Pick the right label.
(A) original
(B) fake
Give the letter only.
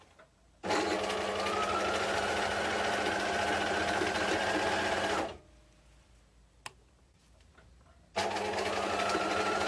A